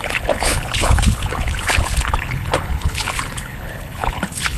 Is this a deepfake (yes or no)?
yes